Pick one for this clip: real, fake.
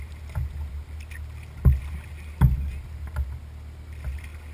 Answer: real